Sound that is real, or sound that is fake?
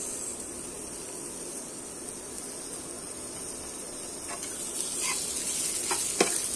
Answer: real